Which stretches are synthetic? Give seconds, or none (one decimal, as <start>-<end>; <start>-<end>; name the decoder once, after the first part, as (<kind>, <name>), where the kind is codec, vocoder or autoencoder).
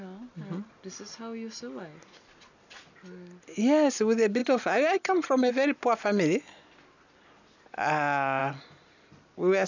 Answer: 4.4-5.5 (vocoder, HiFi-GAN)